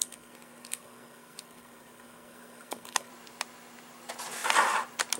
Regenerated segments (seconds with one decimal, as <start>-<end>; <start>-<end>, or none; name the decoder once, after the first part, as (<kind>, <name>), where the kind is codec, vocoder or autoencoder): 0.0-3.1 (codec, SNAC)